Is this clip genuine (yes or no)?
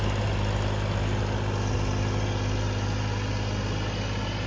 yes